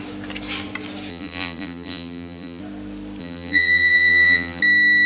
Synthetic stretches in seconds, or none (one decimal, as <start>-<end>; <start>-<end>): 1.1-2.6; 3.2-4.6